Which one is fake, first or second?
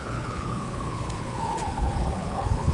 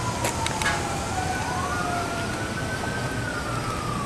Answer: first